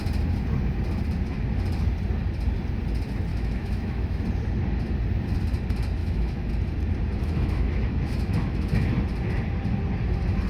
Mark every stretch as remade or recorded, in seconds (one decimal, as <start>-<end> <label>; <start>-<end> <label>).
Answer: 0.0-3.3 recorded; 3.3-4.2 remade; 4.2-6.0 recorded; 6.0-6.5 remade; 6.5-7.2 recorded; 7.2-8.9 remade; 8.9-10.5 recorded